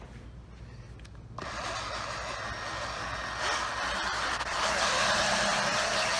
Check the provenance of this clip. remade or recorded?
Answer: recorded